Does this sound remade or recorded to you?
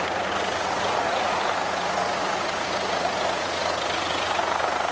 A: remade